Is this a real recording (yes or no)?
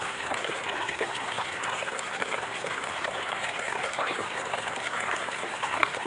no